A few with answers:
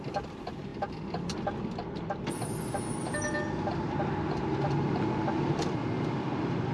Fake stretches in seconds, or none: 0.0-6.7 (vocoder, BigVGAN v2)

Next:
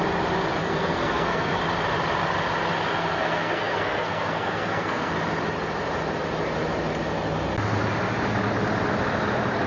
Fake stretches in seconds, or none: 0.6-1.6 (codec, SNAC); 2.9-5.1

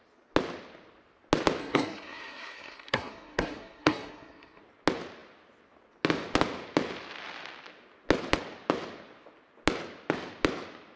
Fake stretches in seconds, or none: 1.6-4.6 (codec, SNAC)

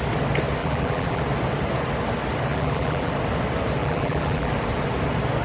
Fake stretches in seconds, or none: 0.6-1.2 (vocoder, BigVGAN v2); 2.5-3.1; 3.8-4.5

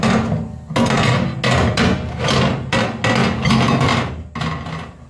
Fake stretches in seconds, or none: none

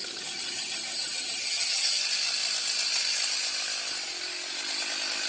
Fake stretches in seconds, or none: 0.0-2.0 (vocoder, HiFi-GAN)